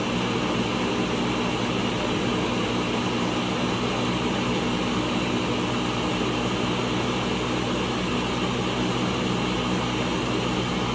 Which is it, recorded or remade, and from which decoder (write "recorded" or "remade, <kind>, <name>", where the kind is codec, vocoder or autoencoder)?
recorded